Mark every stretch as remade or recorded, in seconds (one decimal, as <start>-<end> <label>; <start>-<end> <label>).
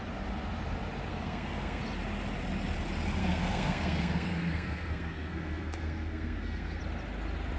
0.0-1.1 recorded; 1.1-1.8 remade; 1.8-3.2 recorded; 3.2-6.8 remade; 6.8-7.6 recorded